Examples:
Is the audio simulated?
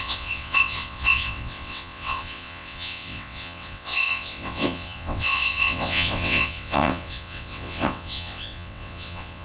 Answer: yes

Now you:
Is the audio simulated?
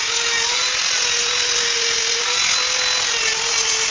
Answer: no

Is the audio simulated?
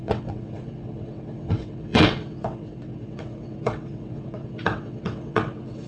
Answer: yes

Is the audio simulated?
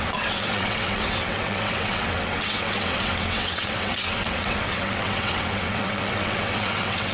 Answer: yes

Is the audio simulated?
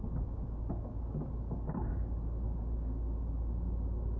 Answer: no